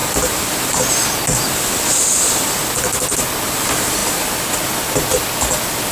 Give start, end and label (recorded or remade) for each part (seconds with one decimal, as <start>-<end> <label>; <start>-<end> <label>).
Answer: 0.0-4.0 recorded; 4.0-4.6 remade; 4.6-5.9 recorded